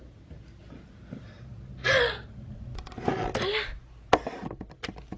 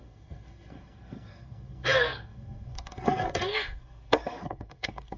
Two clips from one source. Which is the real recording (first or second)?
first